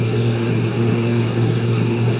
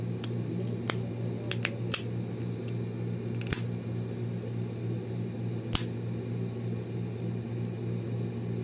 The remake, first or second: first